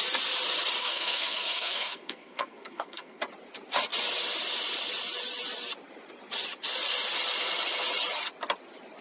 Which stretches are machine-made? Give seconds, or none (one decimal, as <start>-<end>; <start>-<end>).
0.8-3.2